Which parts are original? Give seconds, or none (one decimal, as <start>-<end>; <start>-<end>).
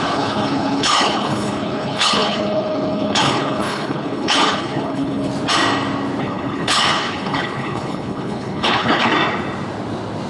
5.3-6.2; 9.1-10.3